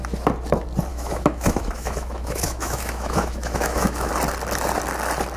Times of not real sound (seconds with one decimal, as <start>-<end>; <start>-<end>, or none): 0.9-4.1